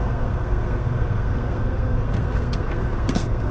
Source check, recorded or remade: remade